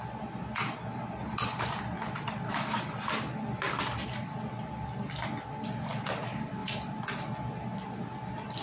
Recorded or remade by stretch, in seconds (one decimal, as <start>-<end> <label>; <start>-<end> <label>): 0.0-8.6 recorded